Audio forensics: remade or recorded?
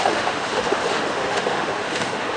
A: remade